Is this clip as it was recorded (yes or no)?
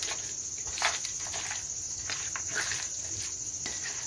yes